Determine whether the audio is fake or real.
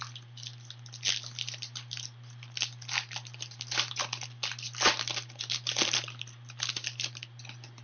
real